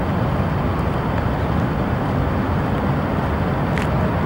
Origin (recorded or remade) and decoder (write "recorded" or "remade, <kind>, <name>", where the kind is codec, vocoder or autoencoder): recorded